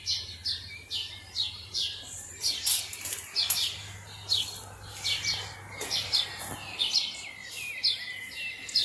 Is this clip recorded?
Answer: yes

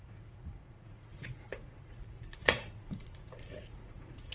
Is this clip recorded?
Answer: no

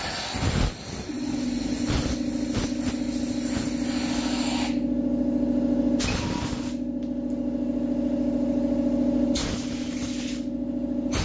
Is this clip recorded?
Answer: yes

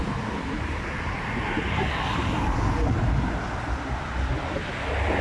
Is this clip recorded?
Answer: yes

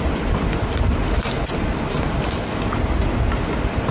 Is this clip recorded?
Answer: yes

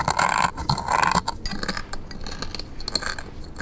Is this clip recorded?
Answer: yes